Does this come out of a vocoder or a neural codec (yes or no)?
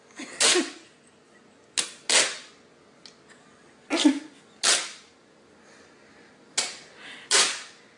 no